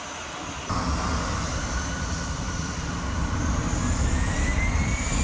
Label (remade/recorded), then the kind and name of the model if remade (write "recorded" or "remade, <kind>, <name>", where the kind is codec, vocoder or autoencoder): recorded